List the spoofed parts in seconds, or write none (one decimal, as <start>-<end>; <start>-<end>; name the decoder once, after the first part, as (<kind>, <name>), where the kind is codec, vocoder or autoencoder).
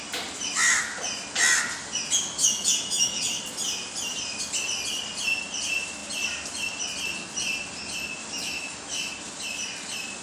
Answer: 2.4-3.4 (autoencoder, DAC-VAE); 8.2-9.1